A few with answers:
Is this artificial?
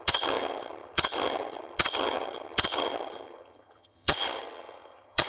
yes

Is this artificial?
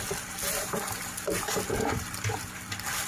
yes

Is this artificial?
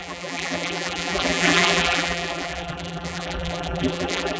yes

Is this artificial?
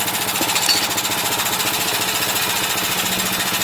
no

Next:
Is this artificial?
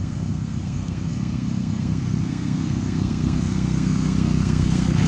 yes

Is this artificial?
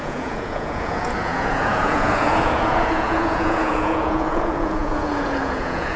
yes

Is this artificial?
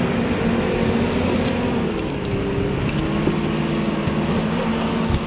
no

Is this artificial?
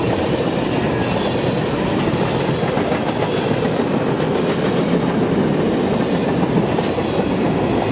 no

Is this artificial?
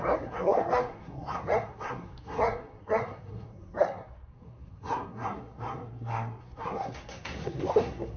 yes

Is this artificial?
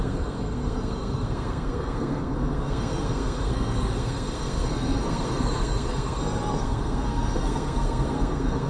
yes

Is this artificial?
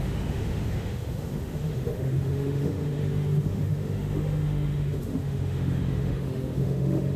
yes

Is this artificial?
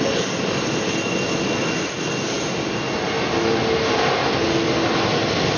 no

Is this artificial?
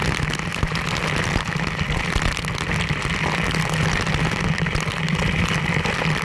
no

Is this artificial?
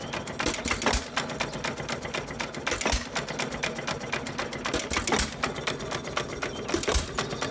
no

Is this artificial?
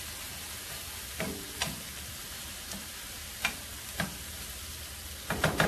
no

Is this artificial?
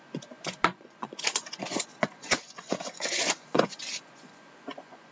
yes